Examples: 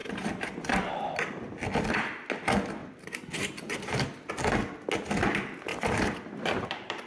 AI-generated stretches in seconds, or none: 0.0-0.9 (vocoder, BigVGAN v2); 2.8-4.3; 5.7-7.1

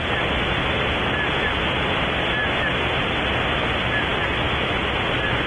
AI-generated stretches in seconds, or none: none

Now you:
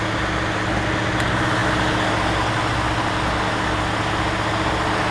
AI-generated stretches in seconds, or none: none

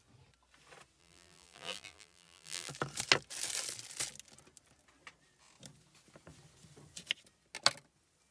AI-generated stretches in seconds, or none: 1.0-2.7 (vocoder, BigVGAN v2)

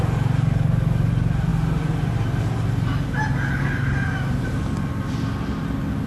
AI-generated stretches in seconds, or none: none

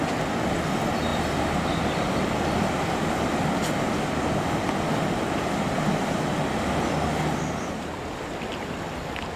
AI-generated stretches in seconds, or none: none